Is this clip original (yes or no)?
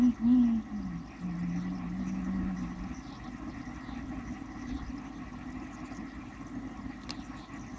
yes